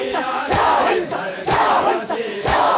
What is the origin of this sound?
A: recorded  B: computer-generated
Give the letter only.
B